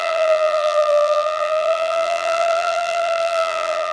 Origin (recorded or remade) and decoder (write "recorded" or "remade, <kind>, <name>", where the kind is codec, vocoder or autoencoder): remade, vocoder, BigVGAN v2